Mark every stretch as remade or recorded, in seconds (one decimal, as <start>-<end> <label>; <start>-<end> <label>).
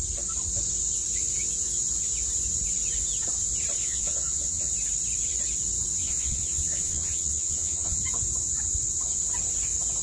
0.0-3.8 recorded; 3.8-4.7 remade; 4.7-6.0 recorded; 6.0-8.0 remade; 8.0-10.0 recorded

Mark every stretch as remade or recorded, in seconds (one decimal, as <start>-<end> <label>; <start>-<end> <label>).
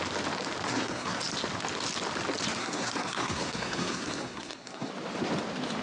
0.0-0.7 recorded; 0.7-1.2 remade; 1.2-2.6 recorded; 2.6-4.9 remade; 4.9-5.8 recorded